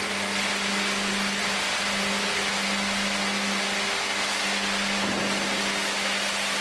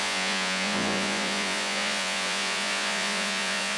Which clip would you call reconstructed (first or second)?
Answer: second